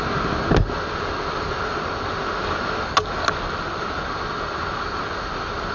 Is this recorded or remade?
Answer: recorded